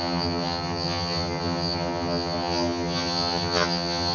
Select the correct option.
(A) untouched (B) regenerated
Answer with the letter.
B